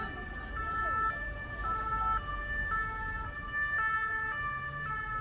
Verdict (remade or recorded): recorded